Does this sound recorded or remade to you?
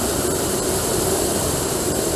remade